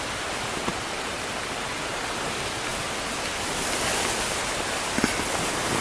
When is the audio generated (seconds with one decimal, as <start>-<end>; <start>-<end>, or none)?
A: 0.7-1.8